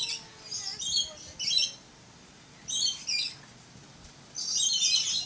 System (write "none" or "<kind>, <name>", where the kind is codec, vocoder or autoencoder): none